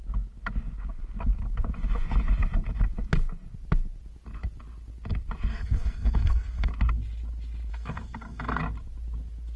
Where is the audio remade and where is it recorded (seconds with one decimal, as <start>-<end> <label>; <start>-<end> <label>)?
0.0-5.5 recorded; 5.5-6.7 remade; 6.7-7.7 recorded; 7.7-8.6 remade; 8.6-9.6 recorded